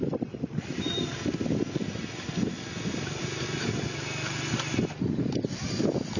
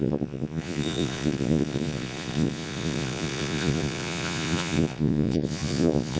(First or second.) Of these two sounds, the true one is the first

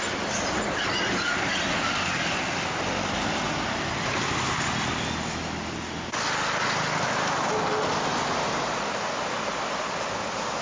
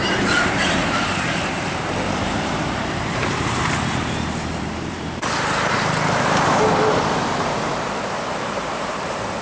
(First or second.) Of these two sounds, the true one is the first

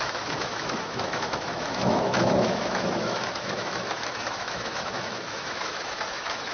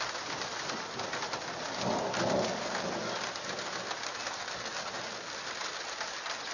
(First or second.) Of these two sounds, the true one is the second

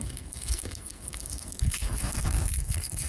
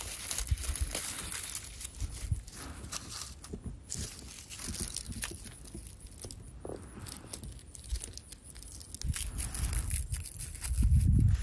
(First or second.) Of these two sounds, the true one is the second